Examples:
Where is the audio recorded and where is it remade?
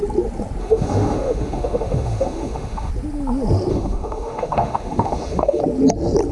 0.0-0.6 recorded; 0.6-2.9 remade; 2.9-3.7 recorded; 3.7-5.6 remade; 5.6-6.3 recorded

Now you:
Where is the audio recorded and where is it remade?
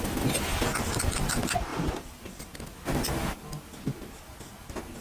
0.0-5.0 recorded